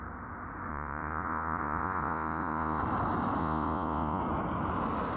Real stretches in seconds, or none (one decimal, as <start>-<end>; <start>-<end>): 0.0-0.7; 2.8-3.4; 4.2-5.2